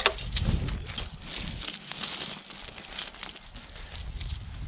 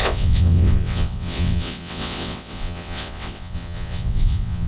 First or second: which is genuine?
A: first